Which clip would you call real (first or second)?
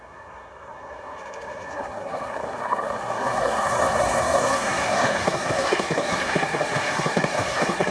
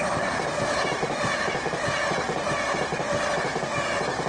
second